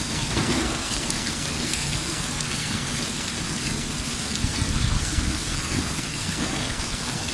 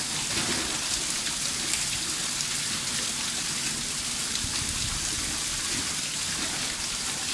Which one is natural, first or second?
second